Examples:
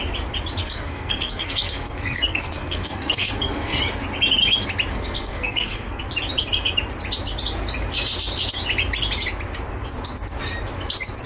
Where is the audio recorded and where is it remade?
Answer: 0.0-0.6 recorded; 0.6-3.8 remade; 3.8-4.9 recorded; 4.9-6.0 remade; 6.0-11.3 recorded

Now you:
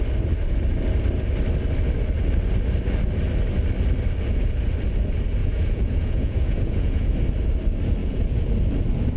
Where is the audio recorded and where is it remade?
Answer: 0.0-5.4 recorded; 5.4-7.1 remade; 7.1-8.0 recorded; 8.0-8.5 remade; 8.5-9.2 recorded